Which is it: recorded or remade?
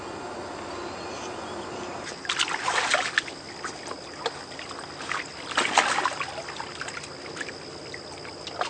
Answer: recorded